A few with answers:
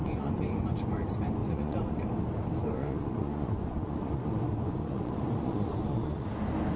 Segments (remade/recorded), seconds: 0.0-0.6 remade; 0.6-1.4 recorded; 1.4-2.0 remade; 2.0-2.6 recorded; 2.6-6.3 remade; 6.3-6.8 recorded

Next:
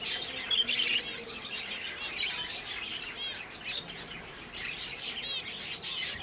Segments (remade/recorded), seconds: 0.0-6.2 recorded

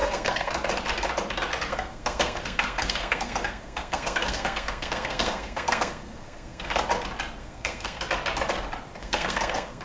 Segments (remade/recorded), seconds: 0.0-0.5 remade; 0.5-1.7 recorded; 1.7-6.8 remade; 6.8-7.4 recorded; 7.4-8.0 remade; 8.0-9.0 recorded; 9.0-9.8 remade